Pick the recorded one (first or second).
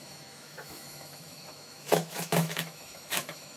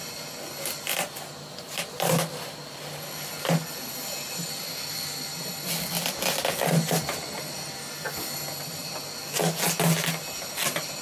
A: second